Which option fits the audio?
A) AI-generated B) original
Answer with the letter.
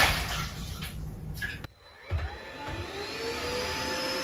B